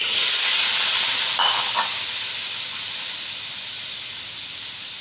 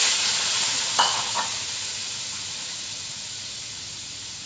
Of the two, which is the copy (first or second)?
second